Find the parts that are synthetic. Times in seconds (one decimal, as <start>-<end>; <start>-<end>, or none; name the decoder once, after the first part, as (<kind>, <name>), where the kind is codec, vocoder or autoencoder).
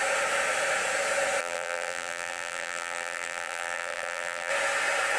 1.4-4.5 (vocoder, BigVGAN v2)